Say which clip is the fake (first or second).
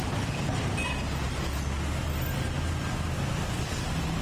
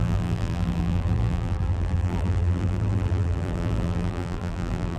second